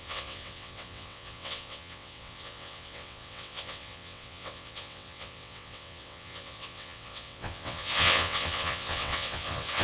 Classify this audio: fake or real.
fake